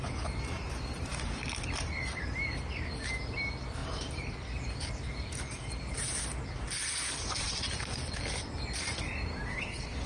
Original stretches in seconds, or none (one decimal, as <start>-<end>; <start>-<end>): 0.0-9.5